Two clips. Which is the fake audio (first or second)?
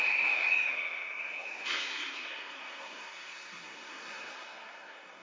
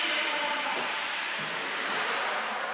first